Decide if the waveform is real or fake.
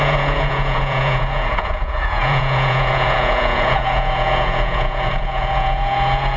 fake